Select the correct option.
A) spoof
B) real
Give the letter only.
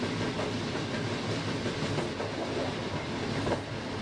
B